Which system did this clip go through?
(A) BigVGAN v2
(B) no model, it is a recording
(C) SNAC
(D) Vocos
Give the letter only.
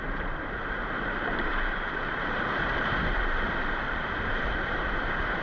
A